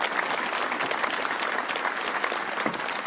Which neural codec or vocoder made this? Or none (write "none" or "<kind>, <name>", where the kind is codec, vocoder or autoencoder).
none